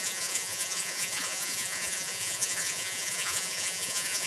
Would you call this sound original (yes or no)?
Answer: no